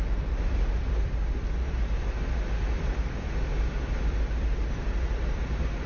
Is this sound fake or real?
real